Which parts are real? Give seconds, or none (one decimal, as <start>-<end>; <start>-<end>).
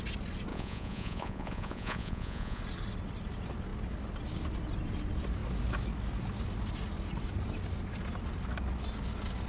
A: 0.0-0.5; 2.6-9.5